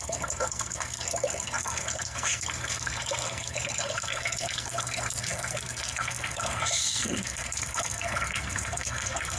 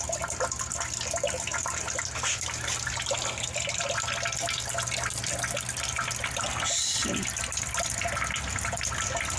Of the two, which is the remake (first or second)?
first